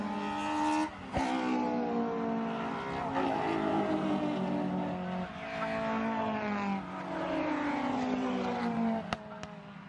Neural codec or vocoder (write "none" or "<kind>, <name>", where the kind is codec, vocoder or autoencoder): none